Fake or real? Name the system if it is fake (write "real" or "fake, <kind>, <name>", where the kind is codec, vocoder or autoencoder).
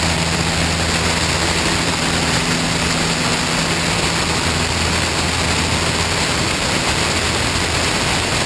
real